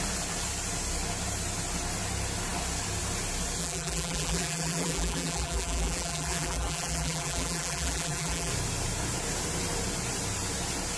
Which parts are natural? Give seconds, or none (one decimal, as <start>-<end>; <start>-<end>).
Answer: 0.0-3.6; 8.5-11.0